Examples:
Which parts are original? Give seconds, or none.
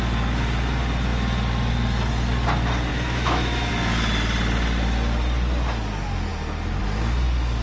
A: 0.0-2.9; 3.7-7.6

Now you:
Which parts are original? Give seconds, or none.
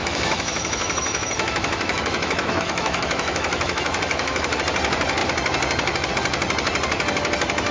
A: 4.6-7.7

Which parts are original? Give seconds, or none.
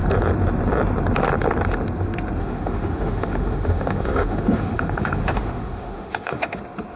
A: 0.0-2.4; 6.6-7.0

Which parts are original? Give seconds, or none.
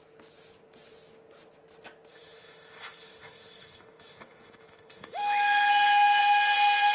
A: 0.0-2.1; 6.2-6.9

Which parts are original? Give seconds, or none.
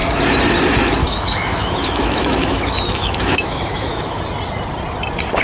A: 0.0-1.0; 4.2-5.4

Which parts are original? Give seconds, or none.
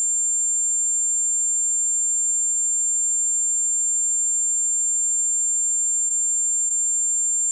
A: 0.0-2.3; 5.2-7.5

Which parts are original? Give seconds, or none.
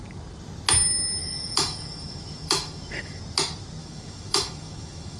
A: 0.0-1.2; 3.2-3.8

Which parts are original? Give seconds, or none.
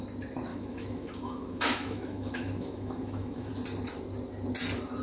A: 0.0-0.5; 3.5-5.0